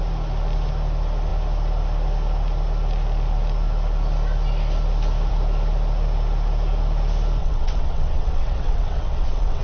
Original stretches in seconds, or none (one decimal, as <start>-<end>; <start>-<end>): 0.0-7.4